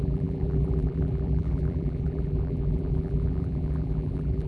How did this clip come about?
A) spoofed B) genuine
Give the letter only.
A